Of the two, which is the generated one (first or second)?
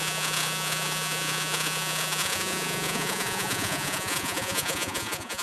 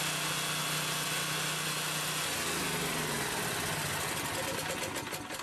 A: first